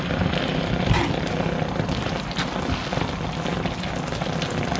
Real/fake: real